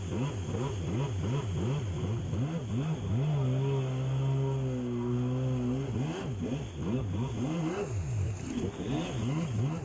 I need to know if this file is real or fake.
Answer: real